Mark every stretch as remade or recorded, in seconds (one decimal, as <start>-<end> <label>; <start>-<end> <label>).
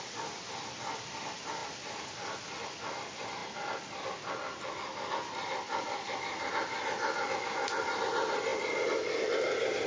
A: 0.0-9.9 recorded